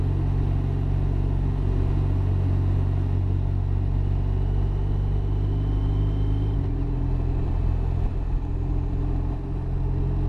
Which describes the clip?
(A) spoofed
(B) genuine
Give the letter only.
B